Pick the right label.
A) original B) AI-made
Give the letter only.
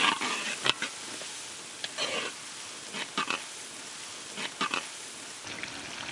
A